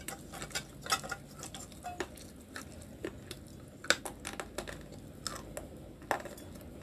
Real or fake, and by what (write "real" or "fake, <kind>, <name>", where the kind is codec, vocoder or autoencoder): real